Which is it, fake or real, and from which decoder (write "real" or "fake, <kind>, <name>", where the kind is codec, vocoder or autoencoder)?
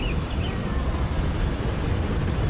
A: fake, vocoder, BigVGAN v2